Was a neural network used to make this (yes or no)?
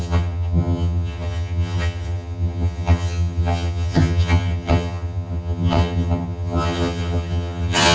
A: yes